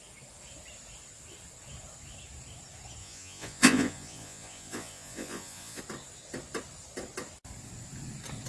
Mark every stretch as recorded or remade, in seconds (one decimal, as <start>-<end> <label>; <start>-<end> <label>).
0.0-3.0 recorded; 3.0-5.8 remade; 5.8-8.5 recorded